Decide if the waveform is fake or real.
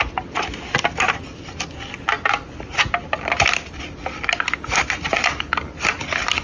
real